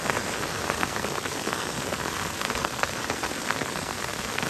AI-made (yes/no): yes